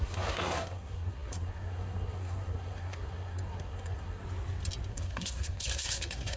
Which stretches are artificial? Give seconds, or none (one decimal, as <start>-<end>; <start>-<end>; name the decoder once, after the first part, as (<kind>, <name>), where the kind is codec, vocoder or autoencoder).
0.0-4.2 (codec, SNAC); 4.9-6.4